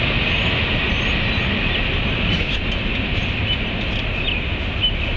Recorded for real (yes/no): yes